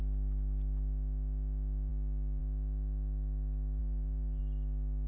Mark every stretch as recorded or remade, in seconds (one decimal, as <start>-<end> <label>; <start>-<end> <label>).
0.0-3.8 recorded; 3.8-4.4 remade; 4.4-5.1 recorded